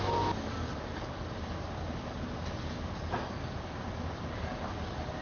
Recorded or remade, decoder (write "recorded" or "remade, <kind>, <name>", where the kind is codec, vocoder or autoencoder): recorded